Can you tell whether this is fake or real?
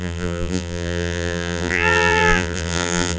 fake